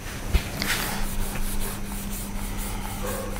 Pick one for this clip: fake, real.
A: real